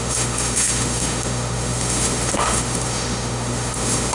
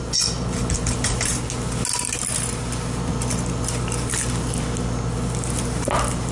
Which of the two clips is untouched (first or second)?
second